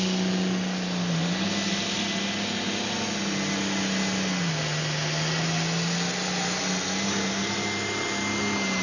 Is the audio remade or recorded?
recorded